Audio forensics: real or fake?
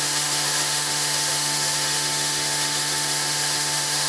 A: fake